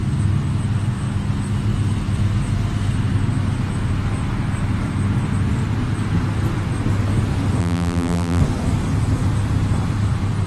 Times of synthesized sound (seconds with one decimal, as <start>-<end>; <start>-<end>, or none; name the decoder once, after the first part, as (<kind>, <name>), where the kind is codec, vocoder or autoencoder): 7.6-8.4 (vocoder, BigVGAN v2)